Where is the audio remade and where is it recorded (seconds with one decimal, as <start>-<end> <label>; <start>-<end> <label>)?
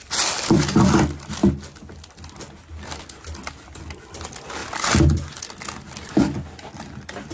0.0-7.3 recorded